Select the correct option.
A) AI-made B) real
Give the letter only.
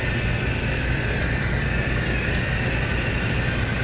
B